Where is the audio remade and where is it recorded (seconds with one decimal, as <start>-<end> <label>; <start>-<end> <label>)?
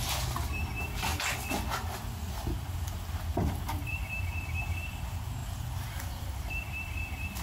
0.0-1.1 remade; 1.1-2.5 recorded; 2.5-7.4 remade